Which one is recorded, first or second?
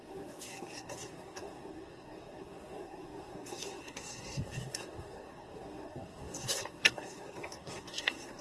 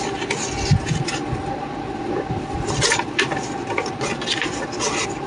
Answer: second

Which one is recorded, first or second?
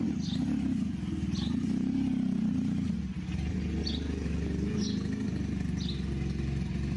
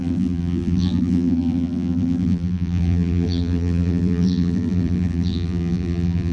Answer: first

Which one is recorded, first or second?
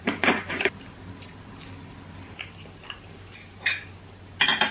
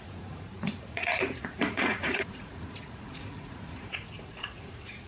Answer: first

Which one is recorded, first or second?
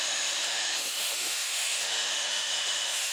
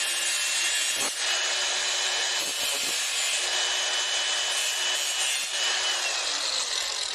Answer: second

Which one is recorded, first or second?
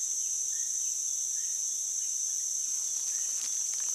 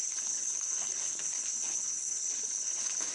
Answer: first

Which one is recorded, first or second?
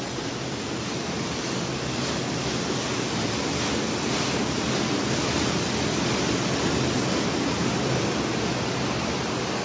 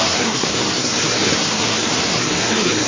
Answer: first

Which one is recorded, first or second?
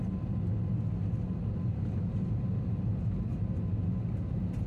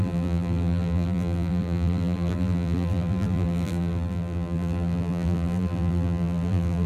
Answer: first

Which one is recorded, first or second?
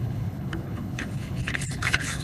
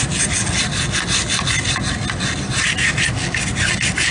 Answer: second